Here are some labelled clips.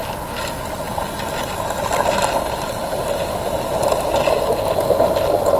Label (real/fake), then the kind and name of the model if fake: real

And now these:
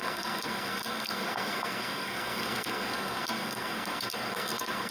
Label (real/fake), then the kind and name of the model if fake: fake, codec, SNAC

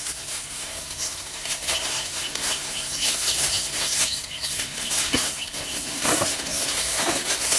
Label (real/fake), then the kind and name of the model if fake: fake, codec, SNAC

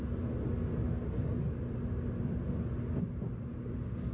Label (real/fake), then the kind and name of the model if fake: real